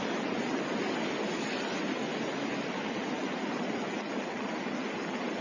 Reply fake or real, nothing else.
real